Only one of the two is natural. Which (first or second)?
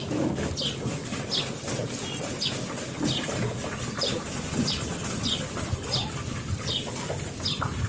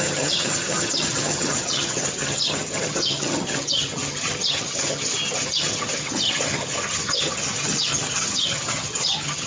first